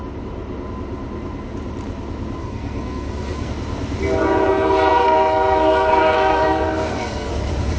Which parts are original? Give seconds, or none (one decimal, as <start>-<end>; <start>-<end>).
0.0-2.4; 3.5-4.5; 7.3-7.8